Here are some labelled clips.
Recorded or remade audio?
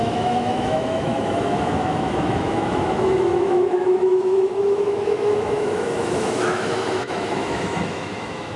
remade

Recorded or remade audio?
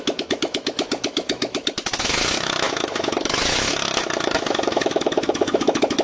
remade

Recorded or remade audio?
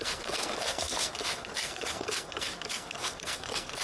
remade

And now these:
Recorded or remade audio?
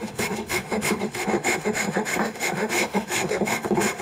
remade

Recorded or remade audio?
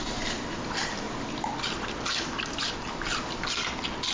recorded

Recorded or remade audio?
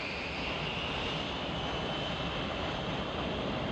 recorded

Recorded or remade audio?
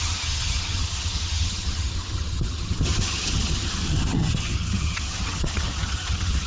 remade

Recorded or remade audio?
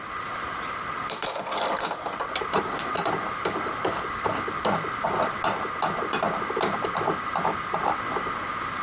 recorded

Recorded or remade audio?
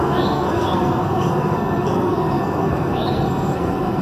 remade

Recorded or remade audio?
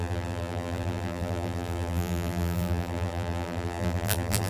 remade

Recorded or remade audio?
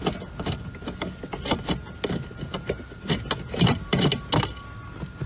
recorded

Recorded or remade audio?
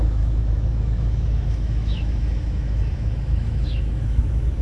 remade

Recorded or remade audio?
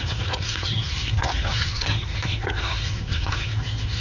remade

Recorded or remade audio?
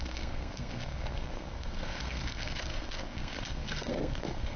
remade